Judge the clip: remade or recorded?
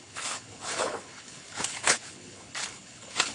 remade